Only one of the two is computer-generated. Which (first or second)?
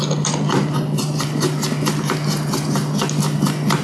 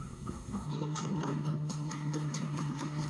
second